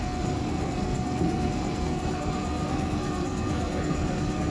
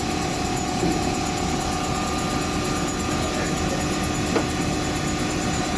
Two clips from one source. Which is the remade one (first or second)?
first